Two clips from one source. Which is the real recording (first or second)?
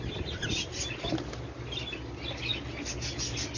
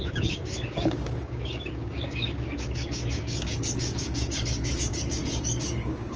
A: first